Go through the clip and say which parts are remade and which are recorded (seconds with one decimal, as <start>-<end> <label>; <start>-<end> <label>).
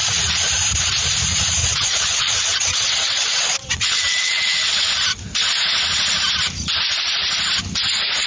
0.0-1.6 recorded; 1.6-4.9 remade; 4.9-8.3 recorded